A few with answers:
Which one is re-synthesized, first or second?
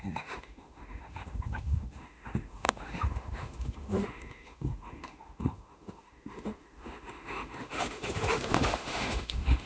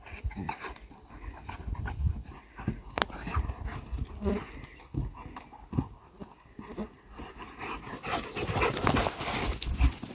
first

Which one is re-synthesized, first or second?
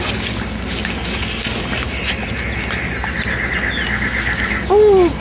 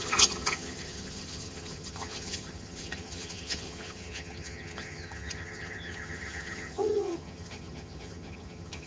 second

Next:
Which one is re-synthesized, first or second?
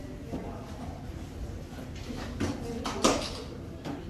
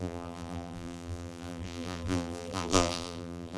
second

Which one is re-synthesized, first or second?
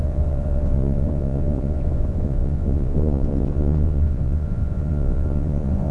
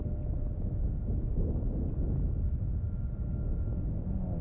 first